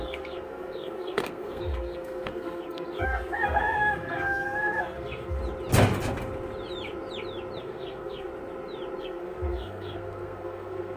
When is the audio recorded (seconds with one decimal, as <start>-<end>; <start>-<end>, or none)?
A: 5.4-7.6; 8.3-9.0